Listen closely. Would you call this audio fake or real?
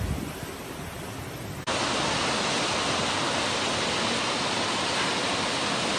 real